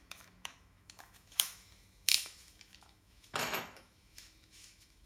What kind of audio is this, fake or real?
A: fake